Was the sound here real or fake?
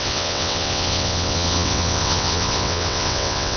fake